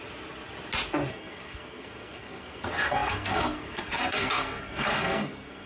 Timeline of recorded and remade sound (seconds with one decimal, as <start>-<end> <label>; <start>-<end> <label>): 0.0-1.1 recorded; 1.1-5.7 remade